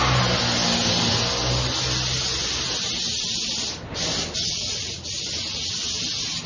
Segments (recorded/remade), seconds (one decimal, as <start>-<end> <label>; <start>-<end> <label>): 0.0-4.4 recorded; 4.4-5.7 remade; 5.7-6.5 recorded